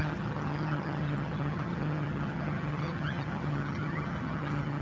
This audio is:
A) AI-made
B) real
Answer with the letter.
A